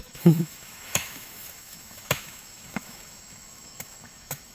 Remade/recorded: remade